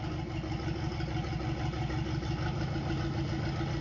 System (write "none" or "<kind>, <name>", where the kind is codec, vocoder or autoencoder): none